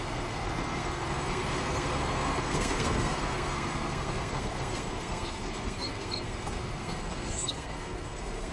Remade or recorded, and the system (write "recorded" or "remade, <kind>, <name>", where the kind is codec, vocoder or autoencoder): remade, codec, SNAC